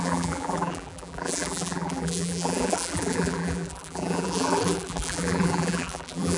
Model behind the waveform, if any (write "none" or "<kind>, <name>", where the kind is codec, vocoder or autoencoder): vocoder, BigVGAN v2